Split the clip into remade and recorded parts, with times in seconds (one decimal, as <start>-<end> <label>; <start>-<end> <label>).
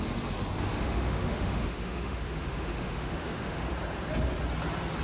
0.0-0.7 recorded; 0.7-3.7 remade; 3.7-5.0 recorded